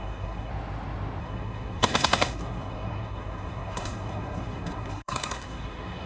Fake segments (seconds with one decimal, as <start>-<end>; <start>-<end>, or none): 0.0-0.5; 1.2-6.1